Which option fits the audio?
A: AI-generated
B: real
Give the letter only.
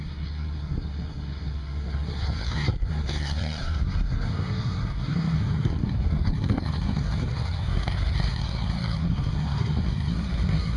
A